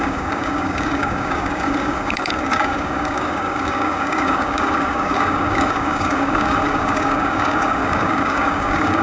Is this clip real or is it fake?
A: fake